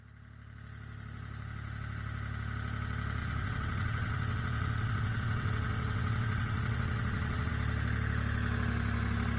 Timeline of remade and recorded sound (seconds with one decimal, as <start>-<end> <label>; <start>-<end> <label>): 0.0-3.2 recorded; 3.2-7.5 remade; 7.5-9.4 recorded